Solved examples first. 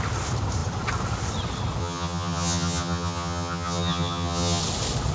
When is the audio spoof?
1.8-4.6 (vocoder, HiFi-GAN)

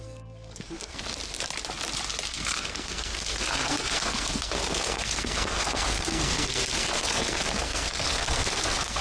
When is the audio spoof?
0.0-1.0 (codec, SNAC); 2.3-9.0

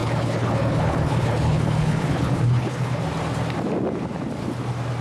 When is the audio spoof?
0.0-3.0 (codec, HILCodec)

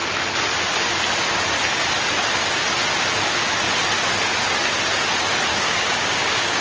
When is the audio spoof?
5.5-6.6 (codec, DAC)

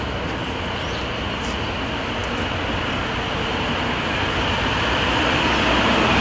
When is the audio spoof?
none